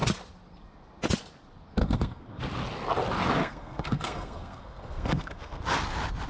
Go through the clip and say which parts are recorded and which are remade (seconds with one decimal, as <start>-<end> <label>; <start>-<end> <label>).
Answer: 0.0-1.8 recorded; 1.8-2.4 remade; 2.4-3.4 recorded; 3.4-5.6 remade; 5.6-6.3 recorded